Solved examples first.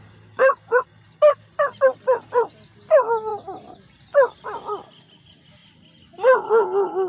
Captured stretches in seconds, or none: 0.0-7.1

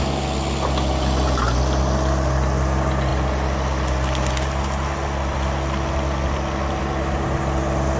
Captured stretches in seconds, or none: 0.0-8.0

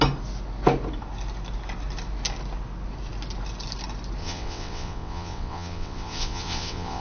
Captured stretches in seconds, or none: 0.0-4.2

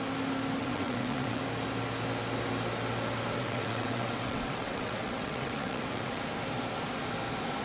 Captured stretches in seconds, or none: 0.0-0.6; 1.4-3.4; 6.2-7.6

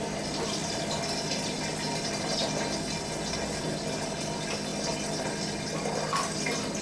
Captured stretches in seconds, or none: 0.0-6.8